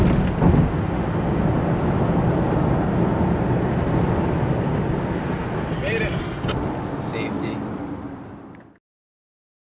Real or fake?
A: real